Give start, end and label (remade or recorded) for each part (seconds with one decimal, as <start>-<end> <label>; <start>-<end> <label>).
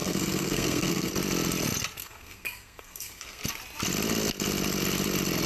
0.0-1.1 remade; 1.1-2.0 recorded; 2.0-3.4 remade; 3.4-5.5 recorded